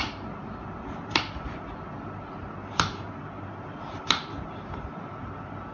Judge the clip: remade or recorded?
recorded